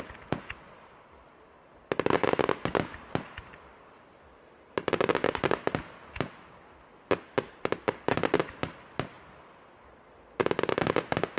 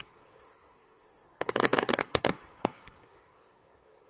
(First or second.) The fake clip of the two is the second